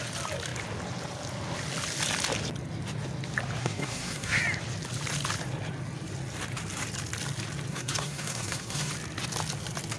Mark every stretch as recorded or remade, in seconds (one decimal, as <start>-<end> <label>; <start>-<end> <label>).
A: 0.0-3.6 recorded; 3.6-4.4 remade; 4.4-7.7 recorded; 7.7-8.9 remade; 8.9-10.0 recorded